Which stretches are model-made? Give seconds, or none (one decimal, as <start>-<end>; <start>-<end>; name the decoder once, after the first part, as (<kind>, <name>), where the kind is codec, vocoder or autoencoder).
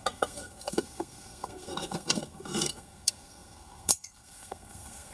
0.0-5.1 (codec, SNAC)